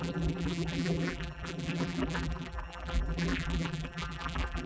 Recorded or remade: remade